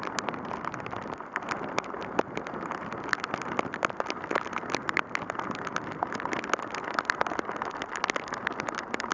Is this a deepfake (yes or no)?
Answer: no